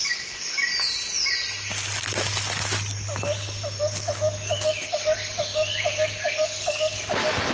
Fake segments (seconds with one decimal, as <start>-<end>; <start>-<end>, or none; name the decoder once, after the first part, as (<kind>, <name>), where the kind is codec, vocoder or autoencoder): 0.0-0.7 (codec, DAC); 3.8-7.5